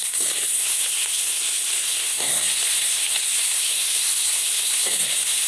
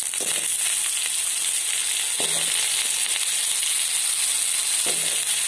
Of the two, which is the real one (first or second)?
second